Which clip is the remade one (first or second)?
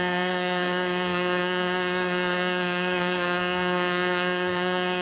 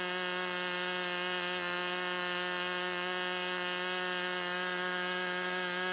first